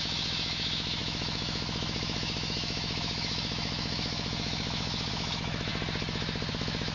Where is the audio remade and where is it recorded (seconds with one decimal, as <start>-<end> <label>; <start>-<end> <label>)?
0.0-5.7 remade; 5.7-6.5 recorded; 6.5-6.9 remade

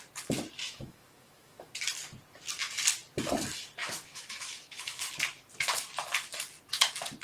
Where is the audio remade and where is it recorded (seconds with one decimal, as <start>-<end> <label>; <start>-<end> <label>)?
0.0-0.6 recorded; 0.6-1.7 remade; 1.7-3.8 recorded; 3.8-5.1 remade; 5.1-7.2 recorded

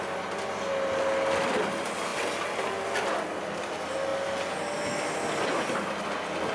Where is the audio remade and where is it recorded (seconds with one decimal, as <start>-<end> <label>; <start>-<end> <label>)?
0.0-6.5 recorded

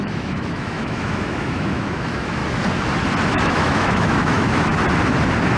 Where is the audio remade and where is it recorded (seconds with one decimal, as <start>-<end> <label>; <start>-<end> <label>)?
0.0-2.4 remade; 2.4-3.3 recorded; 3.3-4.7 remade; 4.7-5.6 recorded